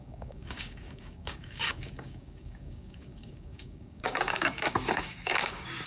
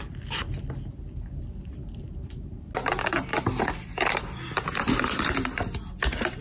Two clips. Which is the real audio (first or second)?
second